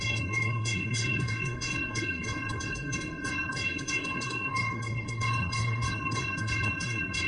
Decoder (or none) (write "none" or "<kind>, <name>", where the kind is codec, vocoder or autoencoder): codec, SNAC